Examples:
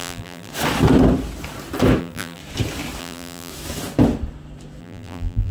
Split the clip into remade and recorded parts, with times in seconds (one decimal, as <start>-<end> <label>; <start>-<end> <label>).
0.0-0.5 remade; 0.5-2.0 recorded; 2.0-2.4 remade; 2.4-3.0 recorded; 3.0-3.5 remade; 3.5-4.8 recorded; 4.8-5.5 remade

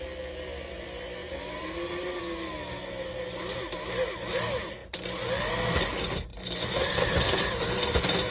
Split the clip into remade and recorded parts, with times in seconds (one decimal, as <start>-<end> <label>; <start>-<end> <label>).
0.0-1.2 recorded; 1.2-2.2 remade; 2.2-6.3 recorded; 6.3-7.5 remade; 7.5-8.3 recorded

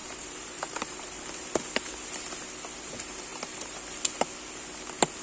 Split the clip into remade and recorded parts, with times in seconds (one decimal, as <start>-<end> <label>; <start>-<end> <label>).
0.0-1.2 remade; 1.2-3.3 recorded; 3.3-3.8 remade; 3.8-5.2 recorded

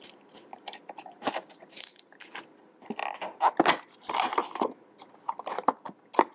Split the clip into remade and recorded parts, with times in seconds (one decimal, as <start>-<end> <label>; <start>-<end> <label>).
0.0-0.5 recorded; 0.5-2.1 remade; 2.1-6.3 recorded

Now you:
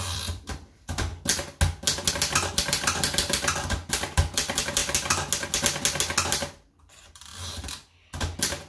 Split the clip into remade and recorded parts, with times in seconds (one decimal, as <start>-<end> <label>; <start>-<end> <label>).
0.0-1.1 remade; 1.1-2.5 recorded; 2.5-4.8 remade; 4.8-6.5 recorded; 6.5-7.3 remade; 7.3-8.7 recorded

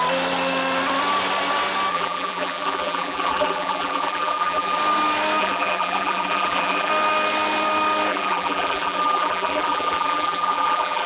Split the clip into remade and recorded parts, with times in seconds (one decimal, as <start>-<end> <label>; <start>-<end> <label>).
0.0-1.9 recorded; 1.9-4.8 remade; 4.8-5.4 recorded; 5.4-6.9 remade; 6.9-8.1 recorded; 8.1-11.1 remade